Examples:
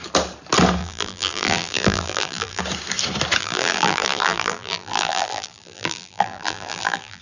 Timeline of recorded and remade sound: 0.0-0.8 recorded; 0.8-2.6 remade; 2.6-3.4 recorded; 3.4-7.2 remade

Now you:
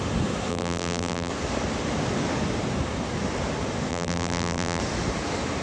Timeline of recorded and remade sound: 0.0-0.5 recorded; 0.5-1.3 remade; 1.3-3.9 recorded; 3.9-4.8 remade; 4.8-5.6 recorded

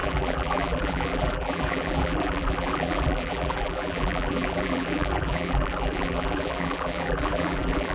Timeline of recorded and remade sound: 0.0-7.9 remade

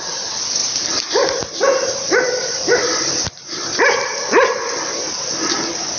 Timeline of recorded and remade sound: 0.0-0.6 recorded; 0.6-4.2 remade; 4.2-6.0 recorded

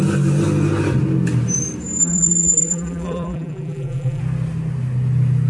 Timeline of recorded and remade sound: 0.0-2.0 recorded; 2.0-4.2 remade; 4.2-5.5 recorded

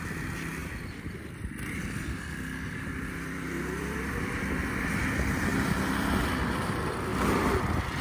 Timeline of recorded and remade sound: 0.0-0.6 recorded; 0.6-4.0 remade; 4.0-5.5 recorded; 5.5-6.3 remade; 6.3-7.1 recorded; 7.1-7.6 remade; 7.6-8.0 recorded